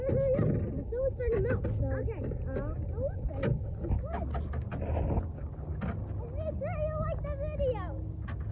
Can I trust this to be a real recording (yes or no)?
yes